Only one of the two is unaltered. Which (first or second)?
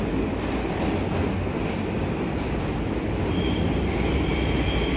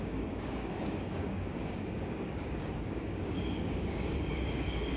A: first